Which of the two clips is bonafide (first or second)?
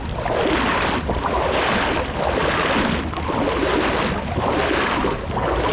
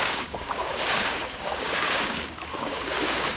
first